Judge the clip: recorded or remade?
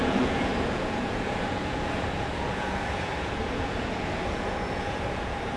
remade